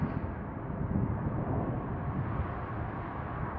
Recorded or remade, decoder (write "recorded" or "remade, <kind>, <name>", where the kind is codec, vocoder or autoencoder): recorded